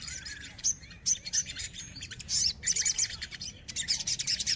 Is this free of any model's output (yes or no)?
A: no